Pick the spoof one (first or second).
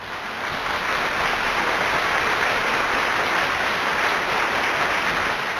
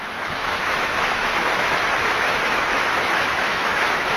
second